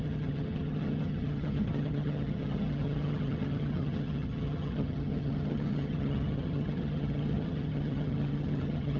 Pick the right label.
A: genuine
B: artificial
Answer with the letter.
B